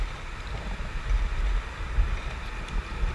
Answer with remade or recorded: recorded